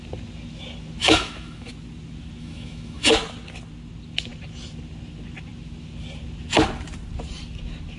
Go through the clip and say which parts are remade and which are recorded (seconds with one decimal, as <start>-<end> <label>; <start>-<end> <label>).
0.0-1.0 recorded; 1.0-1.7 remade; 1.7-2.4 recorded; 2.4-3.1 remade; 3.1-8.0 recorded